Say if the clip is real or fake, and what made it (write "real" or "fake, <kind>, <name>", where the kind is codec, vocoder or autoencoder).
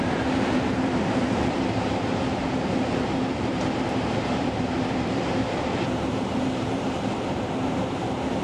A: fake, vocoder, BigVGAN v2